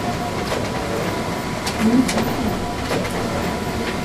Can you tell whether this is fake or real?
real